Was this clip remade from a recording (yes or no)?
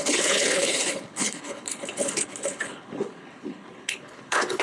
yes